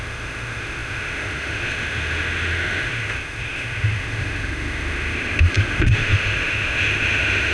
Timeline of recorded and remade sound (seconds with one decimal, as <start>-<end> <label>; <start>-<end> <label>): 0.0-7.5 remade